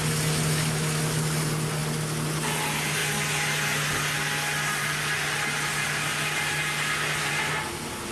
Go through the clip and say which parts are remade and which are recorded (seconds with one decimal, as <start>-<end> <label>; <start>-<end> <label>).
0.0-8.1 recorded

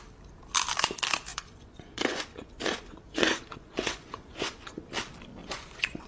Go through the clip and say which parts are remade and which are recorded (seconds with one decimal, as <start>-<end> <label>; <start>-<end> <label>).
0.0-1.3 recorded; 1.3-4.9 remade; 4.9-5.4 recorded; 5.4-6.1 remade

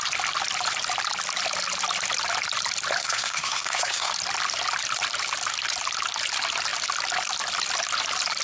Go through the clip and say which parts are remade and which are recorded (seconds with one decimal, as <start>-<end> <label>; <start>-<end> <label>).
0.0-3.0 recorded; 3.0-4.1 remade; 4.1-8.4 recorded

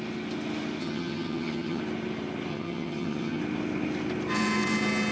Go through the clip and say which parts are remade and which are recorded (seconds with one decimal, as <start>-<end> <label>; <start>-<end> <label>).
0.0-0.8 recorded; 0.8-1.8 remade; 1.8-2.5 recorded; 2.5-3.4 remade; 3.4-5.1 recorded

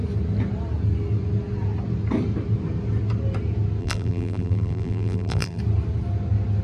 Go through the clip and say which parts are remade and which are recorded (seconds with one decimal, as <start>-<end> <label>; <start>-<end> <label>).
0.0-3.8 recorded; 3.8-5.6 remade; 5.6-6.6 recorded

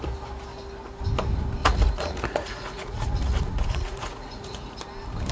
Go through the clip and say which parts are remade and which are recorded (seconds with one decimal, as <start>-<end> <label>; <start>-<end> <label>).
0.0-1.6 recorded; 1.6-4.8 remade; 4.8-5.3 recorded